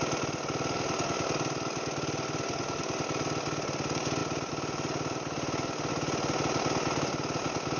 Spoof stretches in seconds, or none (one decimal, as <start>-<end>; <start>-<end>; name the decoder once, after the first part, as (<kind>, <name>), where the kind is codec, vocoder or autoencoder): none